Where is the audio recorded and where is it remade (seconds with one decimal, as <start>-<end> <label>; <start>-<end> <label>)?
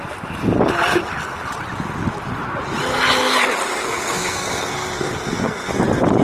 0.0-3.8 recorded; 3.8-5.7 remade; 5.7-6.2 recorded